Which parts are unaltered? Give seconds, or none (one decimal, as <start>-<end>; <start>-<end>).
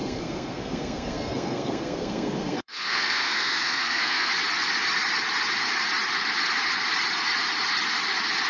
4.3-8.5